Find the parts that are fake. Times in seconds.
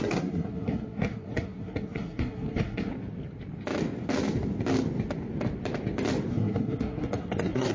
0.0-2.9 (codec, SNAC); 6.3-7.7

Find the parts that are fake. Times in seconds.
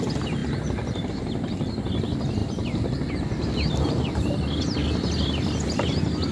none